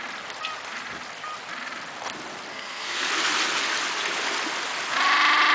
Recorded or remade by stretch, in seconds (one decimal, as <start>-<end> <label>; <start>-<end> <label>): 0.0-2.5 recorded; 2.5-3.1 remade; 3.1-5.5 recorded